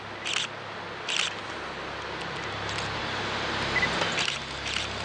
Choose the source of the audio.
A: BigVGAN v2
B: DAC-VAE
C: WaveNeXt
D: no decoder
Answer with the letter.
D